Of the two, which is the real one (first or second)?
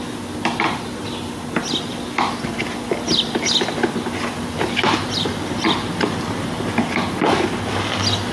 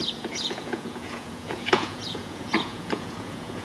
first